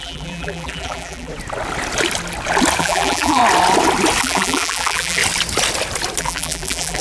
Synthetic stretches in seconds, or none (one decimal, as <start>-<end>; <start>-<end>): 0.0-1.3; 2.8-3.4; 4.2-5.2; 6.2-7.0